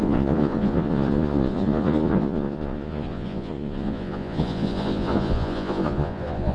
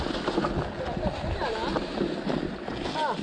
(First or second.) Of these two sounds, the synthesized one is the first